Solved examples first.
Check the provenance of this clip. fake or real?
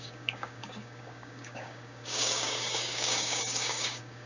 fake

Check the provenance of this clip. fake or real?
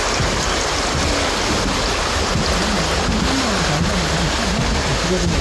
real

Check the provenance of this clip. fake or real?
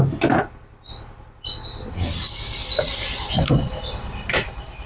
real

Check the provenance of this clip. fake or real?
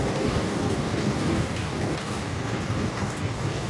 fake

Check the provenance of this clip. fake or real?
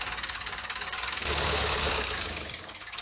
fake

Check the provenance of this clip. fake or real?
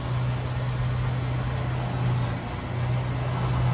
real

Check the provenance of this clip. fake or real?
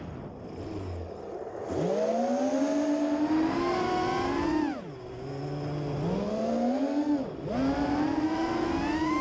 real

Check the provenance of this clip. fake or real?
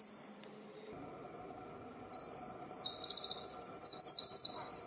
real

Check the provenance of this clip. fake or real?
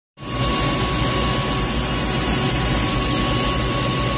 real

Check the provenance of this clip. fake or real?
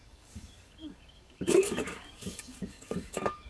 fake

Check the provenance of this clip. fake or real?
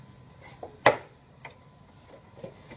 real